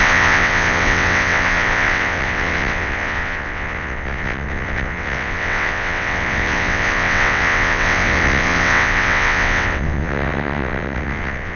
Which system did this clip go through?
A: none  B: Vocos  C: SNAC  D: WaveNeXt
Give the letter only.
D